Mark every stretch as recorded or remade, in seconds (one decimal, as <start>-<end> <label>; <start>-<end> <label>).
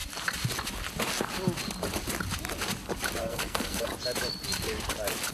0.0-3.2 recorded; 3.2-3.9 remade; 3.9-5.3 recorded